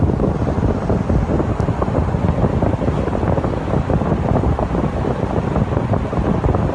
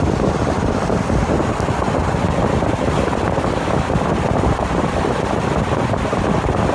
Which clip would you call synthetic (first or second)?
second